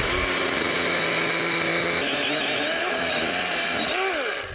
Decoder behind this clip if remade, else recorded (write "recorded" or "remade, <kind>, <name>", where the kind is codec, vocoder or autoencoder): recorded